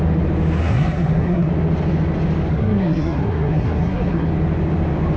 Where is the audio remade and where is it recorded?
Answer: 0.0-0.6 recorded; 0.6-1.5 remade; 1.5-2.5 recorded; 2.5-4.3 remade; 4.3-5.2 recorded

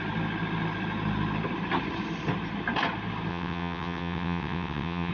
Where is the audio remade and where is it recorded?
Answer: 0.0-3.3 recorded; 3.3-5.1 remade

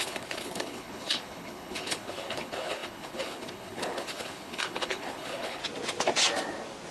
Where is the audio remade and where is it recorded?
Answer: 0.0-5.6 remade; 5.6-6.9 recorded

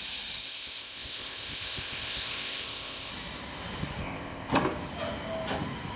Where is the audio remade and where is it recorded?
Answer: 0.0-0.4 recorded; 0.4-3.1 remade; 3.1-4.0 recorded; 4.0-4.5 remade; 4.5-6.0 recorded

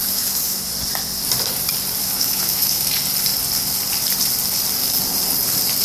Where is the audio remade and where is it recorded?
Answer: 0.0-0.7 remade; 0.7-2.0 recorded; 2.0-2.9 remade; 2.9-5.8 recorded

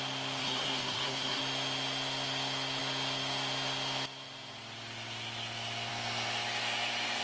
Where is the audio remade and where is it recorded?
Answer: 0.0-0.4 recorded; 0.4-1.4 remade; 1.4-7.2 recorded

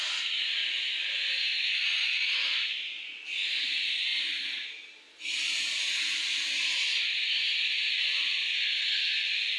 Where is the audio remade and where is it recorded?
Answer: 0.0-9.6 recorded